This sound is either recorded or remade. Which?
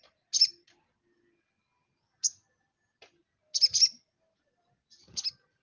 recorded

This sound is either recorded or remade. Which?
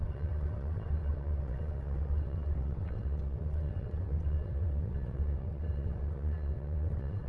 remade